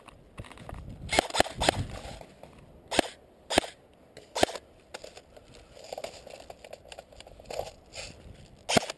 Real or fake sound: real